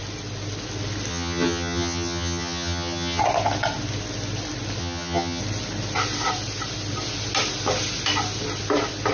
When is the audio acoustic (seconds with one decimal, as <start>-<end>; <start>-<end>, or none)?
0.0-1.1; 3.2-4.8; 5.4-9.1